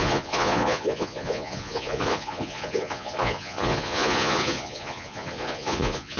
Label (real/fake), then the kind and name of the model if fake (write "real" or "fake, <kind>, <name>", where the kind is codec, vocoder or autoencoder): fake, vocoder, Vocos